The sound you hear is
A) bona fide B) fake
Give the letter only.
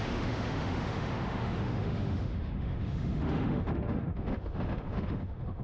B